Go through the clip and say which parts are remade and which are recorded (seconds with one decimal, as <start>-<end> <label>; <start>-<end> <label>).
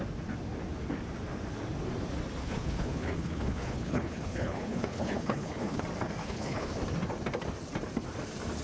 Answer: 0.0-2.4 recorded; 2.4-5.8 remade; 5.8-6.2 recorded; 6.2-6.8 remade; 6.8-8.6 recorded